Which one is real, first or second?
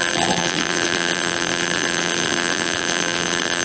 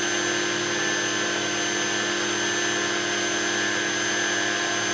second